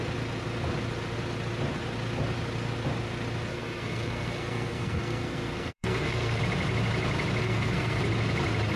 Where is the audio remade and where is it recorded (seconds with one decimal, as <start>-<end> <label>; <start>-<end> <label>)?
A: 0.0-3.5 recorded; 3.5-6.4 remade; 6.4-7.4 recorded; 7.4-8.0 remade; 8.0-8.8 recorded